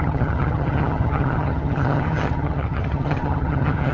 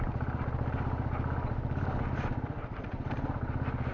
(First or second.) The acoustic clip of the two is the second